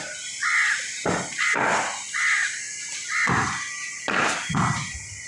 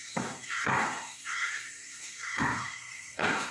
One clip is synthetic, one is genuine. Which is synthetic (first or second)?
second